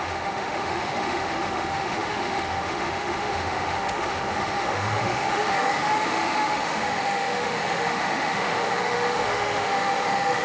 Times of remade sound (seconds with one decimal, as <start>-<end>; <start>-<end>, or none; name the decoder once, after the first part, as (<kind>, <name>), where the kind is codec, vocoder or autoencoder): 0.0-10.4 (autoencoder, DAC-VAE)